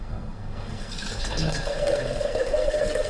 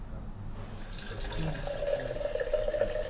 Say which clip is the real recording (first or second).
second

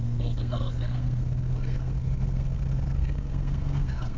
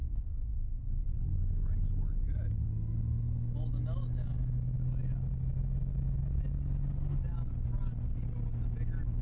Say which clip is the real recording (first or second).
second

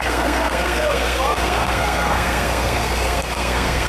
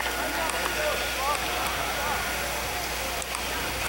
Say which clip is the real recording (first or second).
second